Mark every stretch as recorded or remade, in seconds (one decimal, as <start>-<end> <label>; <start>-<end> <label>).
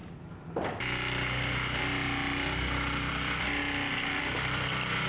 0.0-3.1 recorded; 3.1-3.6 remade; 3.6-4.2 recorded; 4.2-5.1 remade